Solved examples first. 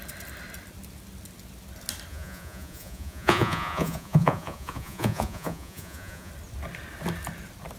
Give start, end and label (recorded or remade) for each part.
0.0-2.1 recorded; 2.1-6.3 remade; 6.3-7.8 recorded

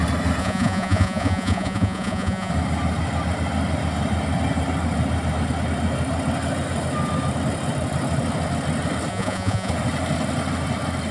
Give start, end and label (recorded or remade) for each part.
0.0-0.4 recorded; 0.4-2.5 remade; 2.5-9.1 recorded; 9.1-9.7 remade; 9.7-11.1 recorded

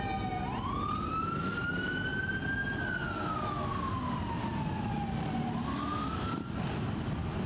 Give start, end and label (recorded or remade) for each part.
0.0-7.5 recorded